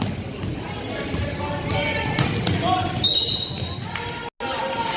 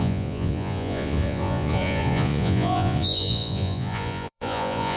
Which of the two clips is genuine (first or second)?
first